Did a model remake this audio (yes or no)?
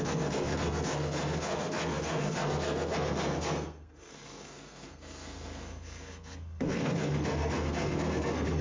yes